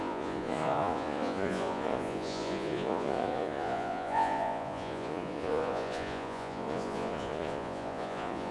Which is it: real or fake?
fake